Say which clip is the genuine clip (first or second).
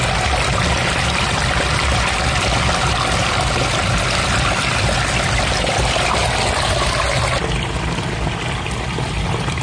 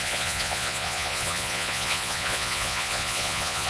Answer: first